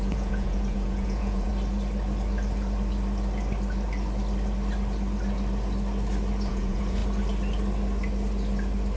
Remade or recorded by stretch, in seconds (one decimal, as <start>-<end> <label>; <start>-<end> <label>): 0.0-1.5 remade; 1.5-6.5 recorded; 6.5-7.0 remade; 7.0-9.0 recorded

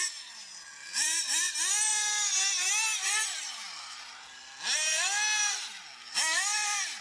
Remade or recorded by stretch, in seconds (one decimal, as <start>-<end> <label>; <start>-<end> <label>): 0.0-7.0 recorded

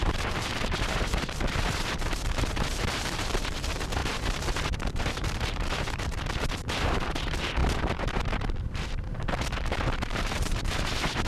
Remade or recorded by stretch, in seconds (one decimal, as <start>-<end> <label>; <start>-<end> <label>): 0.0-11.3 remade

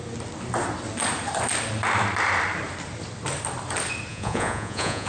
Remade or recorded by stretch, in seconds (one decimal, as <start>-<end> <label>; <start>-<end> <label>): 0.0-4.1 recorded; 4.1-5.1 remade

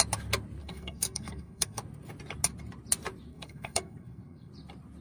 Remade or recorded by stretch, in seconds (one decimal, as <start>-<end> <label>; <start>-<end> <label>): 0.0-0.6 recorded; 0.6-1.8 remade; 1.8-3.3 recorded; 3.3-4.5 remade; 4.5-5.0 recorded

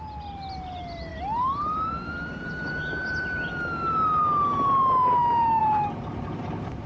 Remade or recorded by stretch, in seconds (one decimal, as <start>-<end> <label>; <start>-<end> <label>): 0.0-6.9 recorded

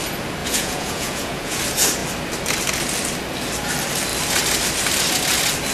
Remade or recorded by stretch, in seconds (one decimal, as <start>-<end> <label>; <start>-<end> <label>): 0.0-0.4 recorded; 0.4-1.6 remade; 1.6-5.7 recorded